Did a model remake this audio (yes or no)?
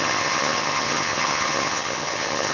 yes